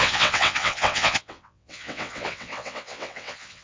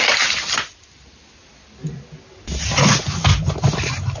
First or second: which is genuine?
second